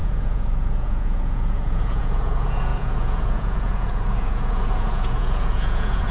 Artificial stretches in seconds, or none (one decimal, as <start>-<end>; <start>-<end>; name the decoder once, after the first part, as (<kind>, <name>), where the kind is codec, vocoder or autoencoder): 0.0-6.1 (vocoder, Vocos)